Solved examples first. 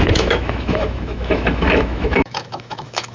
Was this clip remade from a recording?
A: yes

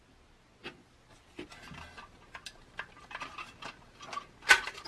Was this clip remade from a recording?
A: no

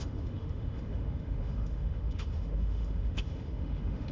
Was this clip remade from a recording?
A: yes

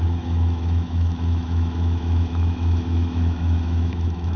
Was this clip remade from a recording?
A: yes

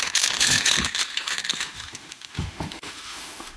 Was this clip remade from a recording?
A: yes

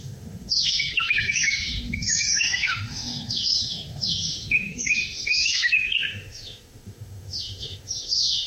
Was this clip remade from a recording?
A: yes